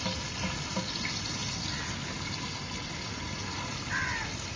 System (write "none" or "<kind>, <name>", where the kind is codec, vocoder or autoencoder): none